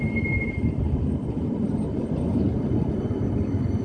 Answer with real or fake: fake